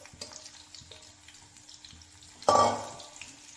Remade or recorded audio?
recorded